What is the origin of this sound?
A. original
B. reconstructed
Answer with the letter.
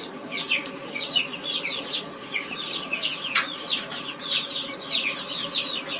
B